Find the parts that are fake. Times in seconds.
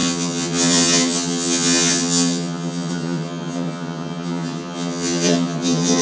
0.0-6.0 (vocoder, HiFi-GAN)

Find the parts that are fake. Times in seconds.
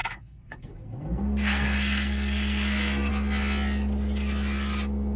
0.0-3.1 (codec, SNAC)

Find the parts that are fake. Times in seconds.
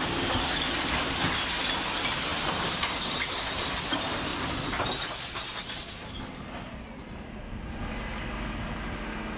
2.3-3.7 (vocoder, BigVGAN v2)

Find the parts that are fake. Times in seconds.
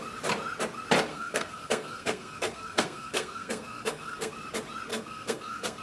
1.1-4.3 (codec, SNAC); 4.9-5.8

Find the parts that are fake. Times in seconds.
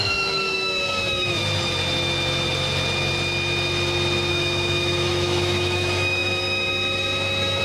0.0-1.4 (autoencoder, DAC-VAE); 4.3-7.6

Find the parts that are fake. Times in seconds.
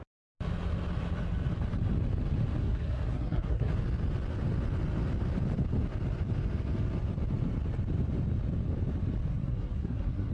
2.6-3.7 (codec, SNAC); 9.3-10.3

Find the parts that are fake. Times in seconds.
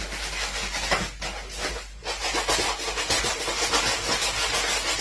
none